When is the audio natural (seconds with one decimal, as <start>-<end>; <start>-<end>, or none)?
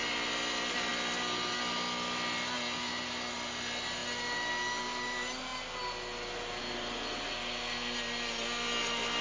0.0-9.2